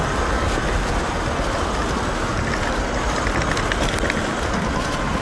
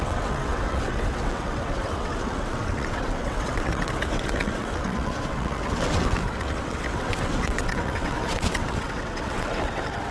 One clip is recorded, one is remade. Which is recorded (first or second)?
first